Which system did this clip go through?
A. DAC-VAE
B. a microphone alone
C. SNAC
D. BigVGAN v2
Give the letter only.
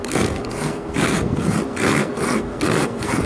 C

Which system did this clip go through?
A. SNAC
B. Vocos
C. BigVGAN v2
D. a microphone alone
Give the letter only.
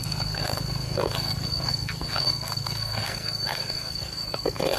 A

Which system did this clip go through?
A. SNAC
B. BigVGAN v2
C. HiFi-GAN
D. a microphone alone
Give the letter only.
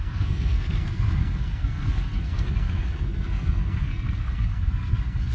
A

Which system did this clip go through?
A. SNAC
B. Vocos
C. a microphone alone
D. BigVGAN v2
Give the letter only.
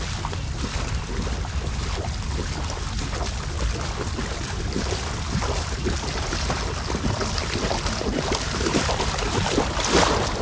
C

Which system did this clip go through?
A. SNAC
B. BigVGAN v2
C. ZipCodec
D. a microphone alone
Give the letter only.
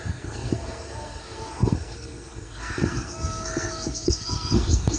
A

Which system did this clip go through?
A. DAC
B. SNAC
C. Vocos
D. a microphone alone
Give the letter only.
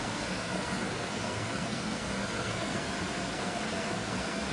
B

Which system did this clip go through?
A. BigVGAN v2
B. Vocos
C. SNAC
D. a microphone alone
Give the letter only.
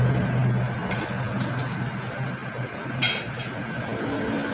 D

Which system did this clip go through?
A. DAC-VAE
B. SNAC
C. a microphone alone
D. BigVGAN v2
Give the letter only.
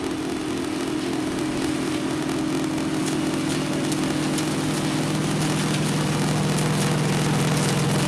C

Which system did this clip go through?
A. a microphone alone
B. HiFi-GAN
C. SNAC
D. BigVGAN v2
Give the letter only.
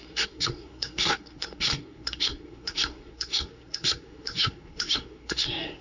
C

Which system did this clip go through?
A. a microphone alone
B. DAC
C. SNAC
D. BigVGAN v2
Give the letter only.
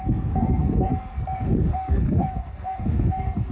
C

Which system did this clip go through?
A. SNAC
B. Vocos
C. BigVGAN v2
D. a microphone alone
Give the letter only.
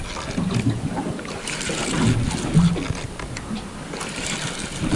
D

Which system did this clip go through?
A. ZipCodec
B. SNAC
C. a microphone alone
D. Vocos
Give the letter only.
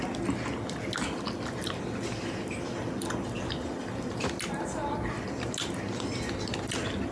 C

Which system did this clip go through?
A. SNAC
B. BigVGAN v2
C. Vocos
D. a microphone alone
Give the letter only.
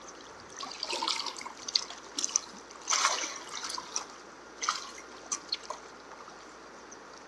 D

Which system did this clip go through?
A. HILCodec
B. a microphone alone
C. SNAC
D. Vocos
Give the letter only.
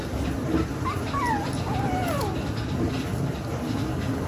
B